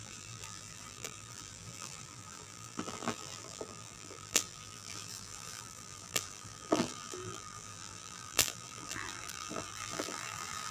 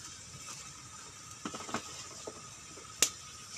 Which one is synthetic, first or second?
first